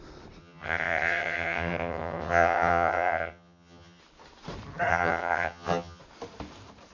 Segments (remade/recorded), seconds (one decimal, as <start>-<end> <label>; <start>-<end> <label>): 0.0-0.4 recorded; 0.4-4.0 remade; 4.0-4.9 recorded; 4.9-6.0 remade; 6.0-6.9 recorded